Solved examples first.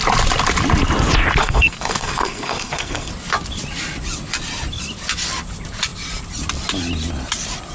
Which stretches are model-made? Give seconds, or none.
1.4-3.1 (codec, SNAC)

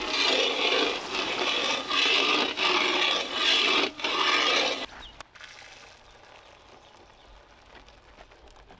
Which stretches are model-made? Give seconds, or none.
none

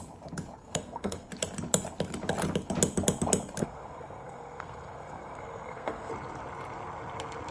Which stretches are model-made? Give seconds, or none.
0.6-1.3 (codec, SNAC); 3.6-6.1